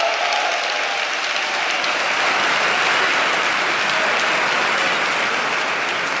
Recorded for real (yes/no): yes